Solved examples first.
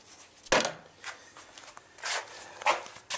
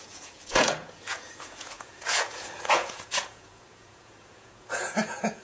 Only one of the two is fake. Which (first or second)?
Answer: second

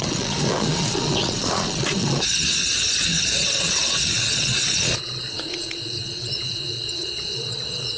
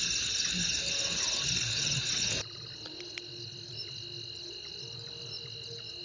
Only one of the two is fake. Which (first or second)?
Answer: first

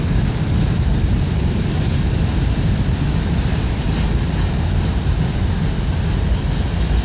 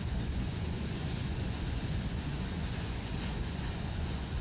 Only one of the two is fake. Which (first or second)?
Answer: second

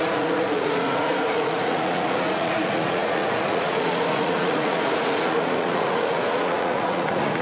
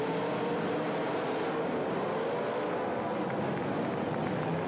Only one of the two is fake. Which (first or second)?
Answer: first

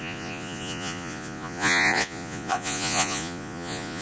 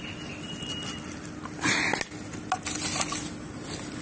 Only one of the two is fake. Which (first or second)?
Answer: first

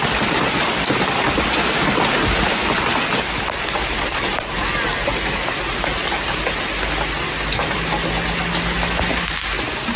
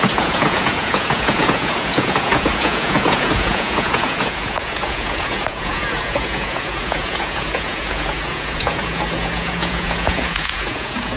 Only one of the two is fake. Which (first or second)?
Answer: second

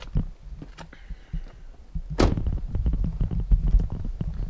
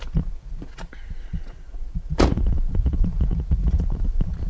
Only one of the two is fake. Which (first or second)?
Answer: second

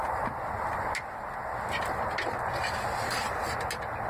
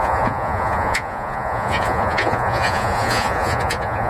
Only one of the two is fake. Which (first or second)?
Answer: second